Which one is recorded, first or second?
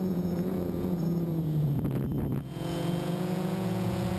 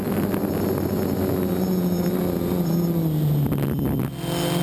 second